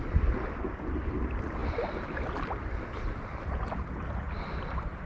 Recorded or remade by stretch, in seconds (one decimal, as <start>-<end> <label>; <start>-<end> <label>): 0.0-5.1 recorded